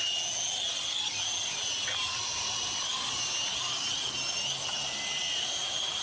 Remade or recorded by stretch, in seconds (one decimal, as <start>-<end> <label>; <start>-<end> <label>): 0.0-6.0 recorded